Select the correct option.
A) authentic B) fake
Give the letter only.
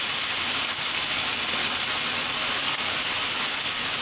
A